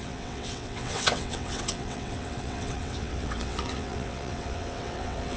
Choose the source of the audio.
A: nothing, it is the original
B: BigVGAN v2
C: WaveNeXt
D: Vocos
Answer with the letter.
C